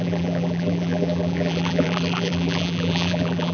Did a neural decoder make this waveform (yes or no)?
yes